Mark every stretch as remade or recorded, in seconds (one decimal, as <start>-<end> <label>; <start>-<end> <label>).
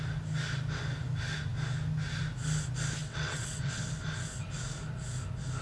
0.0-3.0 recorded; 3.0-3.8 remade; 3.8-5.6 recorded